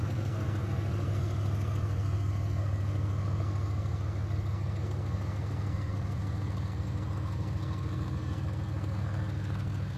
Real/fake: fake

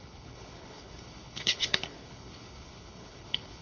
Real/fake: fake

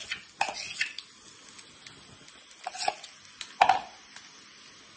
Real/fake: real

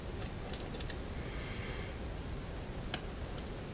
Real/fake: real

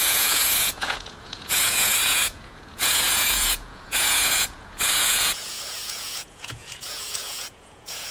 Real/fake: fake